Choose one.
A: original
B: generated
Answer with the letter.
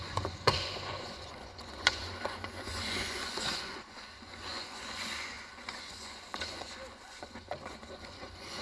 B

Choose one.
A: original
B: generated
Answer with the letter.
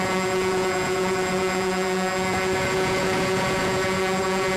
B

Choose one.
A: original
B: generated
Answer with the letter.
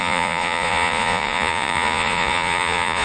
B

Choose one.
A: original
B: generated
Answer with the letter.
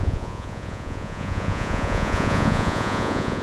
B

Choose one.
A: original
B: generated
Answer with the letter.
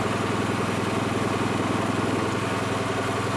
A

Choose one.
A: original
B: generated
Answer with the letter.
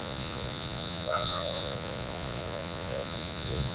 B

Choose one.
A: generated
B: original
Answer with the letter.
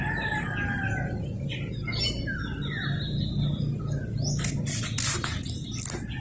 B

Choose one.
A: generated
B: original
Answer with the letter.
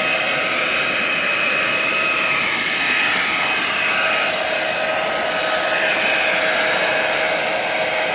B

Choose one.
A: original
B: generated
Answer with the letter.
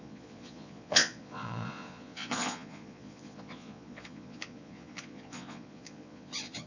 B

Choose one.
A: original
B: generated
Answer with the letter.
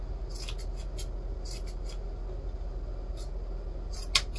A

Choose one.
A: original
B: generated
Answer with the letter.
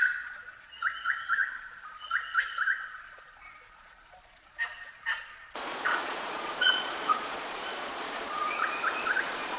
B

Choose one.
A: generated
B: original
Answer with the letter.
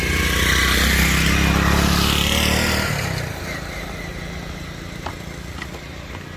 B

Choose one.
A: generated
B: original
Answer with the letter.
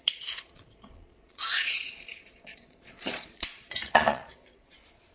A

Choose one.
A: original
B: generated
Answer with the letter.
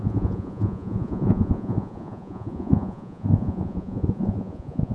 B